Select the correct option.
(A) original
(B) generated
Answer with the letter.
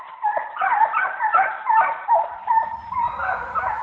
A